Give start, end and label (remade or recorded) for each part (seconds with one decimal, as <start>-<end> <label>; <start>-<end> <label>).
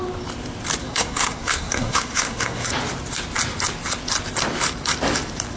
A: 0.0-0.8 recorded; 0.8-2.7 remade; 2.7-5.6 recorded